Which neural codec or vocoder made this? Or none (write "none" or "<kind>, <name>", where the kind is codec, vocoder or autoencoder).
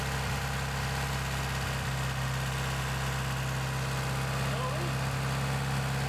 none